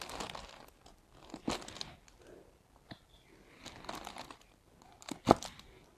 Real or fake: real